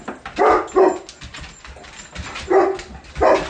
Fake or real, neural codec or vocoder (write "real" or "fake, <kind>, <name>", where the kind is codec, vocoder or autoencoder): real